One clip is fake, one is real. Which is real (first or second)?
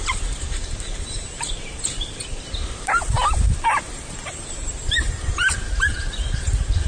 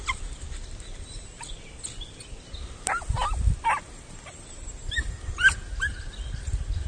second